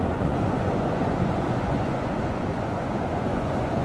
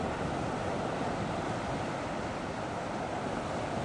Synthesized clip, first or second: first